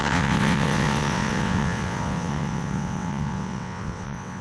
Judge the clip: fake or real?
fake